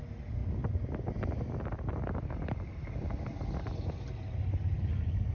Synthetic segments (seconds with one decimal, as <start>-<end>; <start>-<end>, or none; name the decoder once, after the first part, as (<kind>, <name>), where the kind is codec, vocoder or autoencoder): none